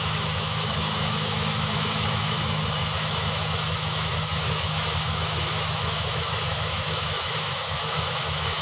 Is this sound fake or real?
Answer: fake